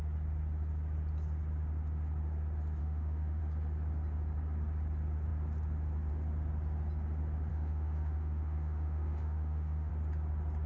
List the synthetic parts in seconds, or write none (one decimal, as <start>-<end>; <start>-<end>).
2.8-3.4; 7.5-9.9